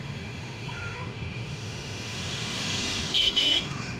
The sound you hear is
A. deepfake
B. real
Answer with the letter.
A